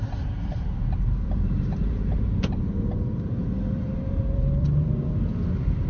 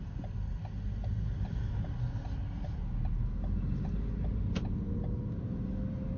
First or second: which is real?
second